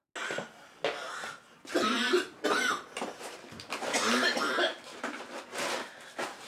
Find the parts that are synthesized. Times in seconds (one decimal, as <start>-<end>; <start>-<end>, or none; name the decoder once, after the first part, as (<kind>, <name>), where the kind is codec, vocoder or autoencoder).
2.7-5.4 (vocoder, BigVGAN v2)